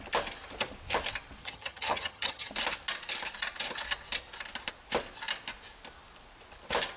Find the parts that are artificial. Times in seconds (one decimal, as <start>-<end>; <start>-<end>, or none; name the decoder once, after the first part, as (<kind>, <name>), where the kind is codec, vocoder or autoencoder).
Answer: 1.4-2.5 (vocoder, HiFi-GAN)